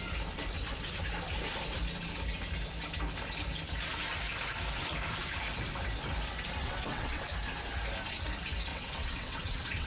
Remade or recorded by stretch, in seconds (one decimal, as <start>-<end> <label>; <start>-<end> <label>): 0.0-6.6 recorded; 6.6-7.2 remade; 7.2-8.7 recorded; 8.7-9.9 remade